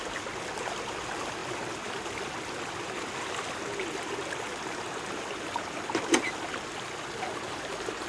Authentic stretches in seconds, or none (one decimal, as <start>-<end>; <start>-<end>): 0.0-8.1